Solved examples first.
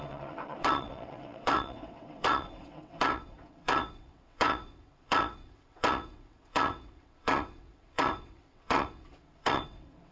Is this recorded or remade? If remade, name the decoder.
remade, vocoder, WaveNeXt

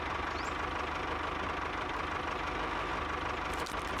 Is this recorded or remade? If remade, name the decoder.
recorded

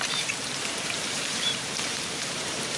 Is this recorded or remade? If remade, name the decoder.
remade, vocoder, BigVGAN v2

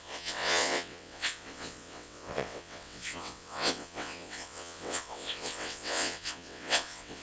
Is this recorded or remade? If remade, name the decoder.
remade, vocoder, WaveNeXt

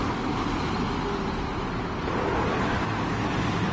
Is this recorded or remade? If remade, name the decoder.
recorded